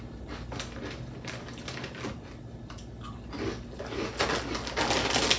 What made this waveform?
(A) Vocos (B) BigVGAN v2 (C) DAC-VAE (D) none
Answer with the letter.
D